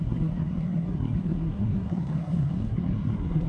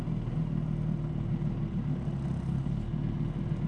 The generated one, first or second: first